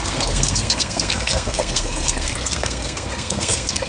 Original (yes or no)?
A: no